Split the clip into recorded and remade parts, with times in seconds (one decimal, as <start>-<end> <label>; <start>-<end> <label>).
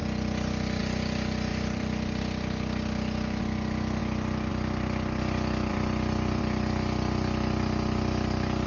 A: 0.0-1.5 recorded; 1.5-2.2 remade; 2.2-5.7 recorded; 5.7-6.4 remade; 6.4-8.7 recorded